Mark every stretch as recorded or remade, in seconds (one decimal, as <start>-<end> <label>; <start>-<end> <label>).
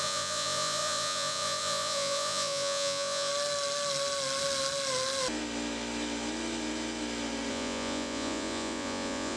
0.0-3.3 remade; 3.3-7.5 recorded; 7.5-9.4 remade